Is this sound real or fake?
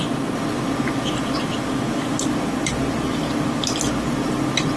real